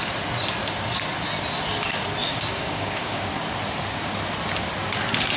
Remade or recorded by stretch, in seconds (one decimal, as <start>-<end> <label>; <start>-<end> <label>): 0.0-2.2 recorded; 2.2-3.3 remade; 3.3-5.4 recorded